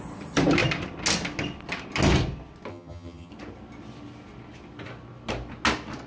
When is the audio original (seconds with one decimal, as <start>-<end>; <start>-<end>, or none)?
0.0-2.7; 3.3-6.1